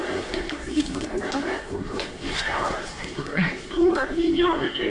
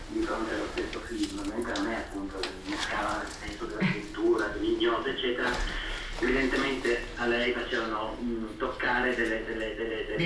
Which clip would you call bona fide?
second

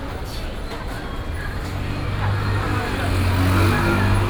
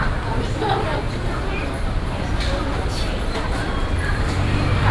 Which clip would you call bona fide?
first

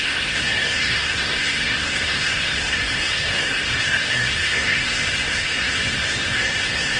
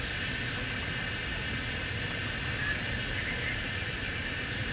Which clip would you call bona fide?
second